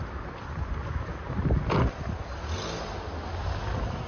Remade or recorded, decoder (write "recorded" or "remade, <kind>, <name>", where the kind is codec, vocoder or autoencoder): recorded